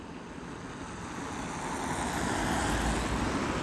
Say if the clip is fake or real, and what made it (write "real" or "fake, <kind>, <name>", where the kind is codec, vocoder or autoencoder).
real